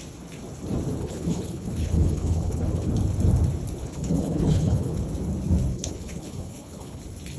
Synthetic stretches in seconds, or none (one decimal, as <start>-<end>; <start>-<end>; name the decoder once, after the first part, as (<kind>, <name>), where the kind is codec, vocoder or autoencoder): 1.0-2.9 (codec, HILCodec); 3.8-5.0; 5.7-7.0